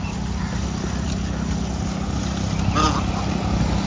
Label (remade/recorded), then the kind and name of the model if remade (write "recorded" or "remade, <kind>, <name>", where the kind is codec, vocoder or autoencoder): recorded